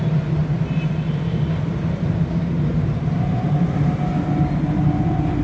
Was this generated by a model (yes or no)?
no